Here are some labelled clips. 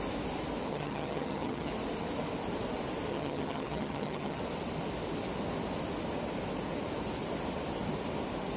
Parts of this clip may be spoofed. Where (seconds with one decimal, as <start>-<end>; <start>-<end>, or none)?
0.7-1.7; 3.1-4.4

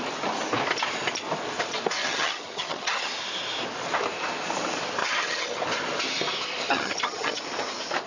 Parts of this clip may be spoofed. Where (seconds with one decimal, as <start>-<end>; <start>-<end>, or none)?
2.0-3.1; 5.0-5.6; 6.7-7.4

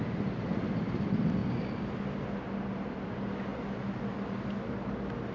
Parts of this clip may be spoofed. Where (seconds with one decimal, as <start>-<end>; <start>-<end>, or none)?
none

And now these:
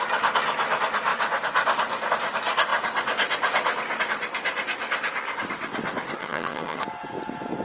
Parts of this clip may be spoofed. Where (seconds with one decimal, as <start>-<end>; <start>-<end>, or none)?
6.2-6.8

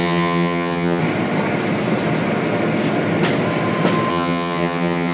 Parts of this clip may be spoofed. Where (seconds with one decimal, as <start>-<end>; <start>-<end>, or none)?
0.0-1.0; 4.1-5.1

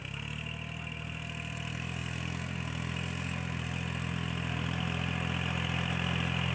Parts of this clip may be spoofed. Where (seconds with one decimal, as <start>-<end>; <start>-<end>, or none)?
none